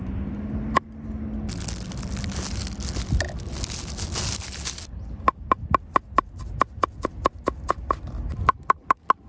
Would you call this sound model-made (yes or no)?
no